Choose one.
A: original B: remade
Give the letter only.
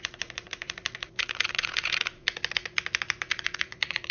B